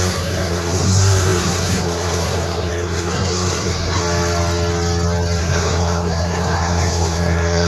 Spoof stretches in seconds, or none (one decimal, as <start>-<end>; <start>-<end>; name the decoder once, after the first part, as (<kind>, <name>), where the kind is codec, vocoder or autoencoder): 0.0-4.0 (codec, SNAC); 5.4-7.7